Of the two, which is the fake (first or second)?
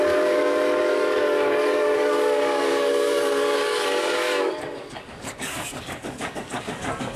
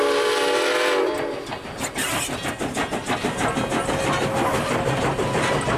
first